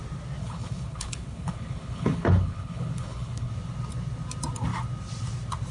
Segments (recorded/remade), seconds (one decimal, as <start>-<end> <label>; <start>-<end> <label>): 0.0-0.4 recorded; 0.4-3.5 remade; 3.5-5.7 recorded